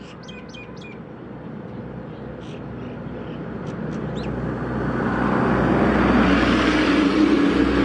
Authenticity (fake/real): real